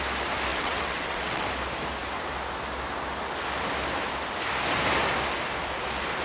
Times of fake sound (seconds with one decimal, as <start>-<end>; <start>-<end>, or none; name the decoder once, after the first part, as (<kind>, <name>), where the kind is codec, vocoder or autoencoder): 0.5-1.4 (vocoder, WaveNeXt)